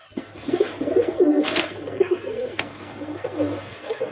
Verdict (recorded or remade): remade